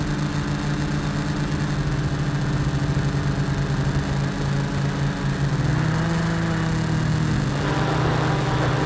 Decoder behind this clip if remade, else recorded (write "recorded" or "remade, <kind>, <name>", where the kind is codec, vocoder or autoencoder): recorded